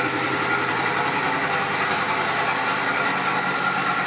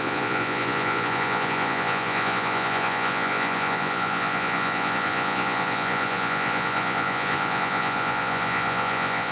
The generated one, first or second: second